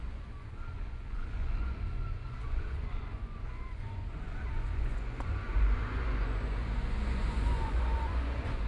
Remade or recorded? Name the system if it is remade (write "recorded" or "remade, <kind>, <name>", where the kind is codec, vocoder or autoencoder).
remade, vocoder, Vocos